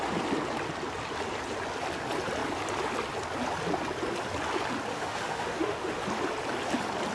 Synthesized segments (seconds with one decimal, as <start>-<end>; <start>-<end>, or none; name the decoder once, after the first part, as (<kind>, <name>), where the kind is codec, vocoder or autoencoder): 4.9-6.0 (autoencoder, DAC-VAE)